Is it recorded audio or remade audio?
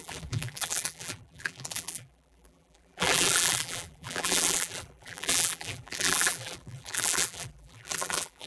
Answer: remade